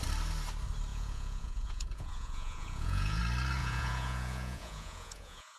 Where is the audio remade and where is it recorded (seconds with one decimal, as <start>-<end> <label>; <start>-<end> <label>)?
0.0-0.9 recorded; 0.9-3.2 remade; 3.2-3.6 recorded; 3.6-5.6 remade